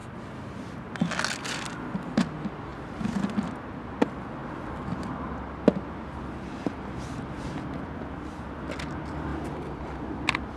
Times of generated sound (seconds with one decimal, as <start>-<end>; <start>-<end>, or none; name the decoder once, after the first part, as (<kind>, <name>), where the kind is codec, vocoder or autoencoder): 0.0-0.8 (vocoder, BigVGAN v2); 2.7-3.5; 9.3-10.6